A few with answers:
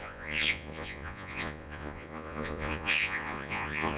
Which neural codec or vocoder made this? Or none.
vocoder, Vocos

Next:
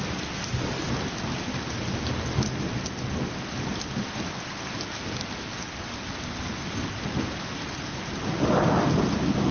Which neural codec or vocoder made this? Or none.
none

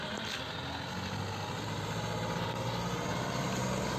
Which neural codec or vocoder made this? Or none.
none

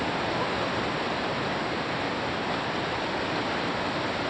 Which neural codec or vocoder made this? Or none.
none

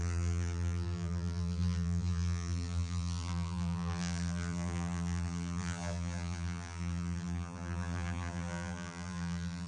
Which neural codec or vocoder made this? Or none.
vocoder, BigVGAN v2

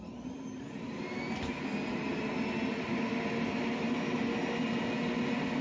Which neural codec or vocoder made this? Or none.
none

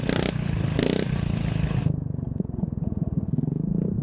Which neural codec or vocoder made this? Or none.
none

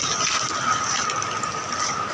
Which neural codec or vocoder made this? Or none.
none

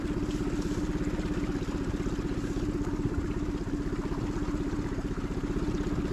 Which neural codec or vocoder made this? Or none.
none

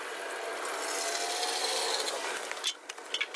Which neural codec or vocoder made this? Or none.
none